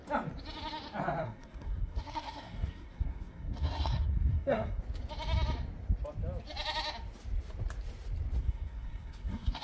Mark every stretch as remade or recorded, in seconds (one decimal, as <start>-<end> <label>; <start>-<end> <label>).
0.0-1.2 recorded; 1.2-4.8 remade; 4.8-8.4 recorded; 8.4-9.6 remade